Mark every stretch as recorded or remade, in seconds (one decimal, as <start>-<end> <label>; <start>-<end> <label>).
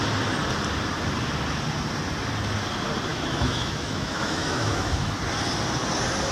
0.0-3.1 recorded; 3.1-5.2 remade; 5.2-6.3 recorded